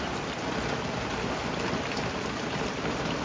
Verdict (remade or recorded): recorded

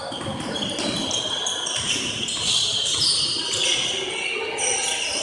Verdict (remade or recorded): recorded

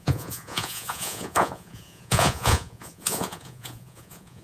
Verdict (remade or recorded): remade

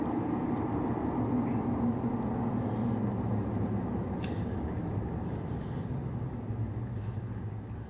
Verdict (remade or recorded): recorded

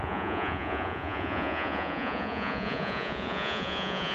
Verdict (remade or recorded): remade